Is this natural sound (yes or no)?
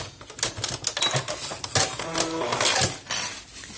yes